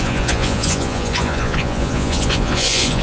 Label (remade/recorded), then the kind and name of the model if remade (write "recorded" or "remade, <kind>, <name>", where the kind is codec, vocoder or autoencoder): remade, vocoder, Vocos